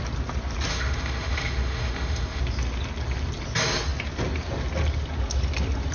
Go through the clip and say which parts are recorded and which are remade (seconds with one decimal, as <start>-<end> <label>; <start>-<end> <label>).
0.0-0.7 recorded; 0.7-2.4 remade; 2.4-5.9 recorded